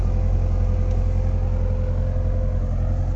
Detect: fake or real real